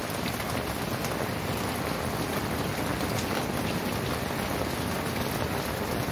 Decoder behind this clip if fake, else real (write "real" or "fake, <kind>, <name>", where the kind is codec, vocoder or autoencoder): real